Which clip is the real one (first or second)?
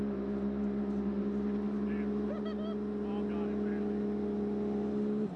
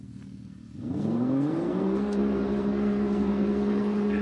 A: first